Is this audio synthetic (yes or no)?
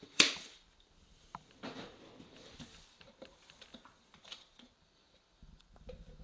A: yes